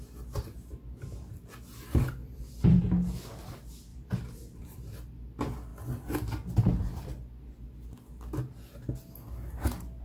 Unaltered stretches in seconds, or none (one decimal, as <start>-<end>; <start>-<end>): 0.0-2.2; 2.8-3.9; 4.9-10.0